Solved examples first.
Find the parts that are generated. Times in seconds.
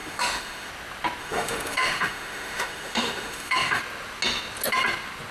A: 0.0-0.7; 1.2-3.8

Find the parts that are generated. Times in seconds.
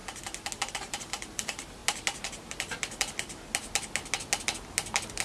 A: 0.7-1.8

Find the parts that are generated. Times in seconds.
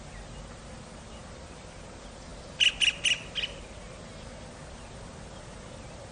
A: none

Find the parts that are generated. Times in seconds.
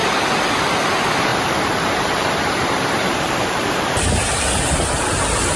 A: 1.3-4.1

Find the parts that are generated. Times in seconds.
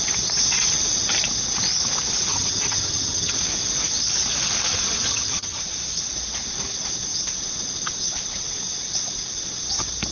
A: 2.3-3.4; 5.1-5.6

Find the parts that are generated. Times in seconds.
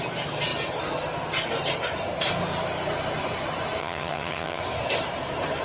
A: 3.8-4.6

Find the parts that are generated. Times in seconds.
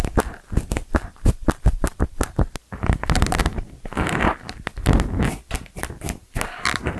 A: 0.8-3.4; 4.2-5.1